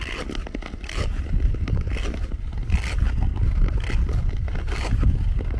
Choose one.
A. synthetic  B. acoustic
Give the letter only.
B